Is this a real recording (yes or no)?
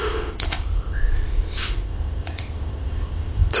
no